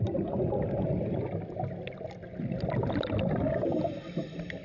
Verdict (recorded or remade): recorded